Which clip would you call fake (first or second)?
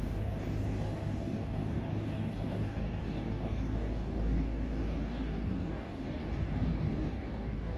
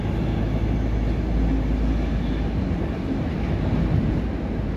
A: first